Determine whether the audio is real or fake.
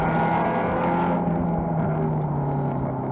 real